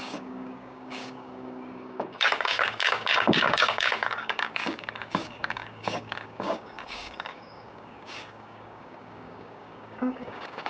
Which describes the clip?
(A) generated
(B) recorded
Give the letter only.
A